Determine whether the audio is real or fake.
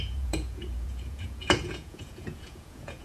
fake